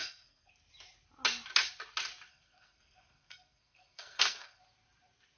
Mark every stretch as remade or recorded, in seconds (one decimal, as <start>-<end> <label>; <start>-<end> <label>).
0.0-0.5 remade; 0.5-2.3 recorded; 2.3-4.6 remade; 4.6-5.4 recorded